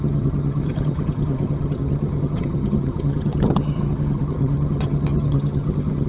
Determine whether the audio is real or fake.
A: fake